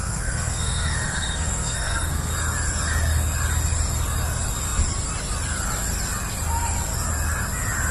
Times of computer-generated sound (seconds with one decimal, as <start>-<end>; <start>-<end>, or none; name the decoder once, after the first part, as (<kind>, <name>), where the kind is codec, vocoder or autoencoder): 0.0-2.3 (codec, SNAC)

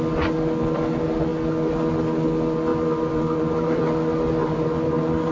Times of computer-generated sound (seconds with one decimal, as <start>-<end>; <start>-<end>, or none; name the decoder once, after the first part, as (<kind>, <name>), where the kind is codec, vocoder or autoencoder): 2.7-3.8 (vocoder, BigVGAN v2); 4.4-5.3

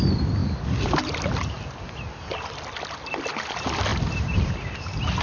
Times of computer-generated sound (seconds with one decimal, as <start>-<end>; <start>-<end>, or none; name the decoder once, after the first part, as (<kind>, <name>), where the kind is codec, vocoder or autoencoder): none

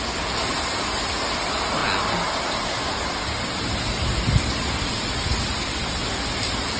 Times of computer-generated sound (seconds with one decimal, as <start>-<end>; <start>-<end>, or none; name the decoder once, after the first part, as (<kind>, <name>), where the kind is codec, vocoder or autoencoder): none